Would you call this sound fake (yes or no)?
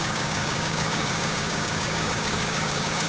yes